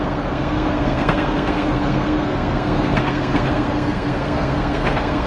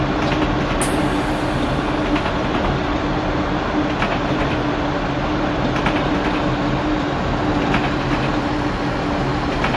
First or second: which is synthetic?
first